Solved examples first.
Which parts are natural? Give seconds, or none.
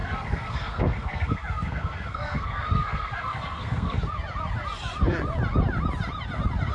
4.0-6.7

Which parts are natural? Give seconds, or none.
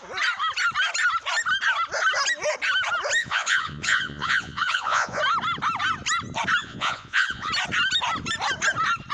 0.0-3.2; 5.2-6.6; 7.5-9.1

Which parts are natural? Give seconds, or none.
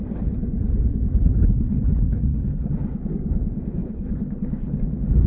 0.0-1.4; 2.7-3.8; 4.8-5.3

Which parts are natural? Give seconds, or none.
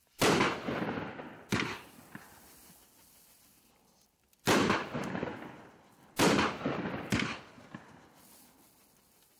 0.0-9.4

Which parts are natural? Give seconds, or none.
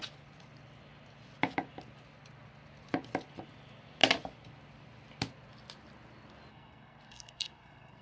0.0-6.5